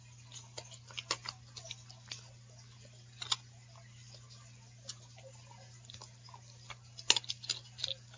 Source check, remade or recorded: recorded